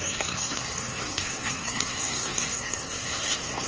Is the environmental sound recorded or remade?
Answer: remade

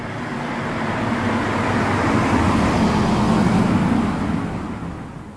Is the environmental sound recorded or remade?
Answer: recorded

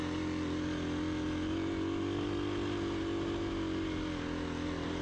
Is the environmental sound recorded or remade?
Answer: recorded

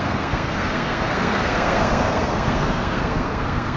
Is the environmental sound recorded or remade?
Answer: remade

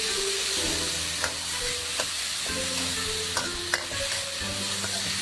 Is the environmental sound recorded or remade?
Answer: recorded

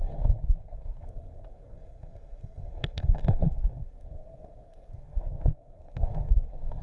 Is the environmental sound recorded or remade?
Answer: remade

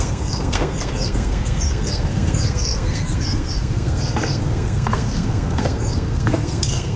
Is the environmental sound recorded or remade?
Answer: remade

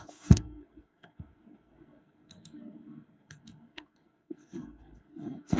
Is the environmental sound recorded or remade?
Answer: remade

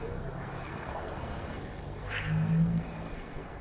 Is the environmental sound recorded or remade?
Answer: remade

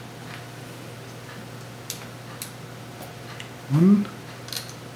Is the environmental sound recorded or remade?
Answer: recorded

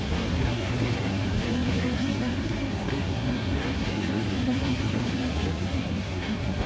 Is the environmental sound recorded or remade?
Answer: remade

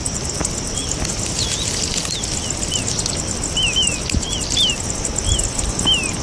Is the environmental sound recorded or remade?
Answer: recorded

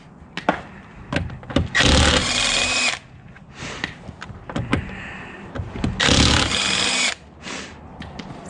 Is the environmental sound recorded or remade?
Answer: recorded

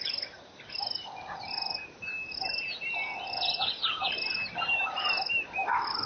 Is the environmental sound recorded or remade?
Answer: recorded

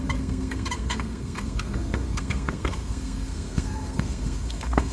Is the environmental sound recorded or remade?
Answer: remade